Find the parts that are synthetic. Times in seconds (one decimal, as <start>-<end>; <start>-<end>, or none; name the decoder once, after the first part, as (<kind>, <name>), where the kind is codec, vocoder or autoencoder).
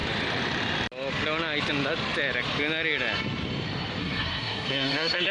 4.0-5.3 (codec, SNAC)